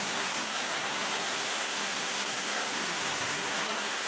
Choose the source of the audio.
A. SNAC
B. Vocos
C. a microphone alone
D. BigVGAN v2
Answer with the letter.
A